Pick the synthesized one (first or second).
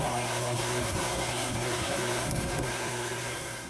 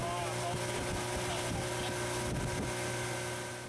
first